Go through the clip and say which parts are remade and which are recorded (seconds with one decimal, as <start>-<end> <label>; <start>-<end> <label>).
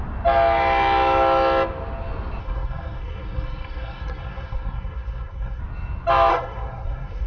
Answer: 0.0-2.4 recorded; 2.4-5.6 remade; 5.6-6.3 recorded; 6.3-7.3 remade